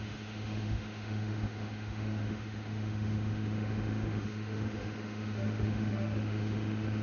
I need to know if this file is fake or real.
fake